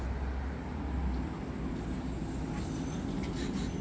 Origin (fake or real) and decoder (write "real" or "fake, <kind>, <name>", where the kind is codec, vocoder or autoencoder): real